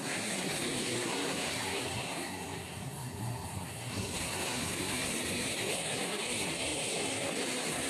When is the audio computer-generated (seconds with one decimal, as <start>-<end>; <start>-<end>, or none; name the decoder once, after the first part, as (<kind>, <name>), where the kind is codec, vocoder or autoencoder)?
0.0-7.9 (codec, SNAC)